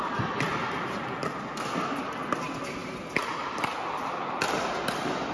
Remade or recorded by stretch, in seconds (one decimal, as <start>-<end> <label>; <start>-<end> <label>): 0.0-5.3 recorded